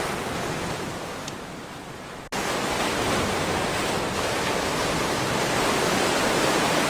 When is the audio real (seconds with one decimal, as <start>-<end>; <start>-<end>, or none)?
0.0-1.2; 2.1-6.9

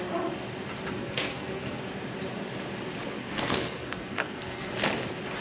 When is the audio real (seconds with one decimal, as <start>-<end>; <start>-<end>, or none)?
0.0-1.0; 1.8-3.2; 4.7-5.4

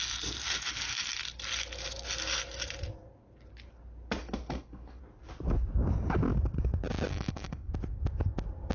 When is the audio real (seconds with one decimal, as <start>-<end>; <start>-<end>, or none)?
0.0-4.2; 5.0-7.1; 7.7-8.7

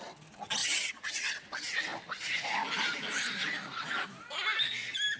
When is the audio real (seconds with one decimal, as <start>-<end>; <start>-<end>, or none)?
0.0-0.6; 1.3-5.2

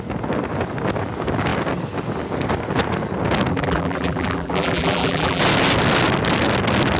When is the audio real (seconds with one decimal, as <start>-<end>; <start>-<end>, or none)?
0.0-3.5; 5.4-7.0

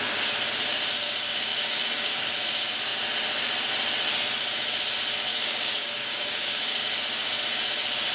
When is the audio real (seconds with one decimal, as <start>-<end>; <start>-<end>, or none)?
0.0-1.5; 2.3-5.3; 6.8-8.1